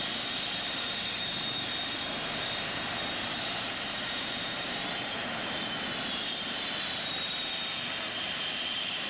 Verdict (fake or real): fake